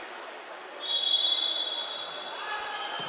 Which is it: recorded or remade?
recorded